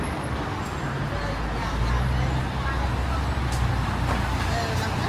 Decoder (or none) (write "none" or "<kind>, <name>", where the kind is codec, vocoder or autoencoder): none